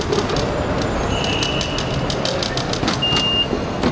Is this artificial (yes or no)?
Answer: no